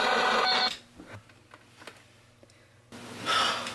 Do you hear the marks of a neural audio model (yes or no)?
no